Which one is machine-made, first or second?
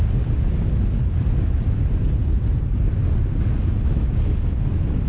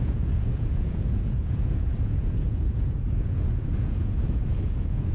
second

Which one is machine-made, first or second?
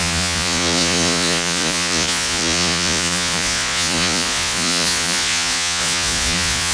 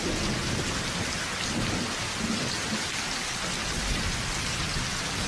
first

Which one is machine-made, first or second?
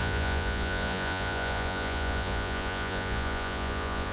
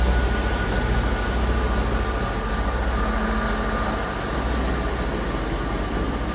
first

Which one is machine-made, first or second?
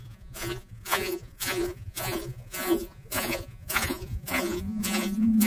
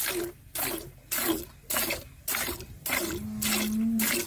first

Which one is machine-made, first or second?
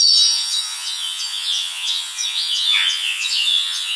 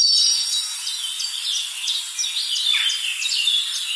first